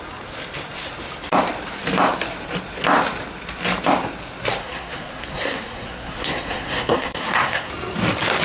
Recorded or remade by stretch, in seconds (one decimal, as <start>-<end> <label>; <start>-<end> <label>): 0.0-4.6 recorded; 4.6-7.7 remade; 7.7-8.4 recorded